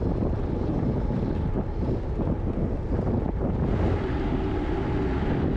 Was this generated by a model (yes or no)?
no